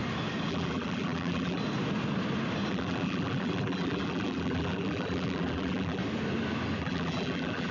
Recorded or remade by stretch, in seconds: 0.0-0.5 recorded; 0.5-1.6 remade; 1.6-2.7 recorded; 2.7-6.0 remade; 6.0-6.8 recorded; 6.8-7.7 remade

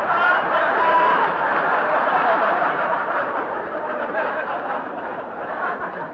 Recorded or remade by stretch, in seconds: 0.0-1.5 remade; 1.5-2.4 recorded; 2.4-6.1 remade

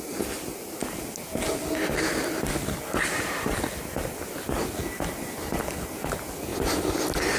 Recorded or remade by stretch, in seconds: 0.0-7.4 recorded

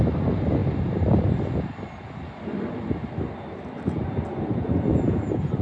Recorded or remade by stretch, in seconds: 0.0-4.9 recorded; 4.9-5.6 remade

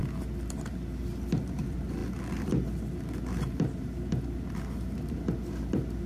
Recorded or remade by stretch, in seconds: 0.0-1.4 recorded; 1.4-6.1 remade

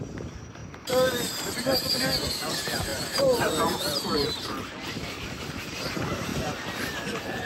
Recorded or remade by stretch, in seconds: 0.0-6.3 remade; 6.3-7.5 recorded